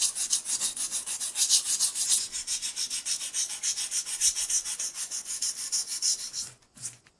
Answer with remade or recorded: remade